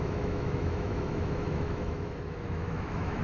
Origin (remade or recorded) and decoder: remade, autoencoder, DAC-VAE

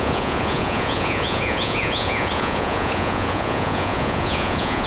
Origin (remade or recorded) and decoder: remade, vocoder, Vocos